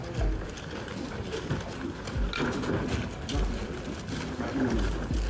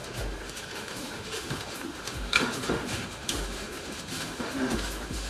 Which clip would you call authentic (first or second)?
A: first